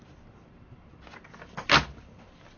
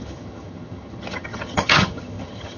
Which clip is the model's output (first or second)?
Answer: second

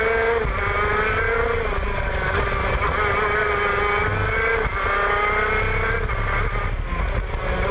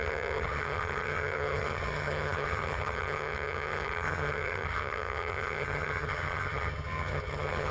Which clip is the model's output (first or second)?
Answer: second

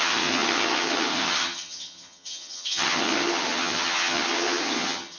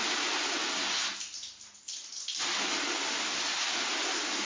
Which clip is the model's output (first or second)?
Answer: first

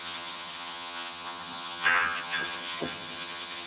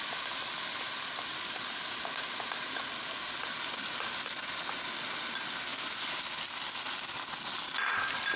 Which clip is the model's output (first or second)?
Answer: first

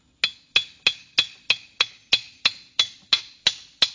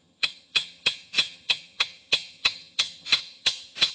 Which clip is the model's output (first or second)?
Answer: second